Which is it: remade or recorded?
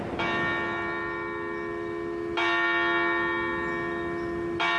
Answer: recorded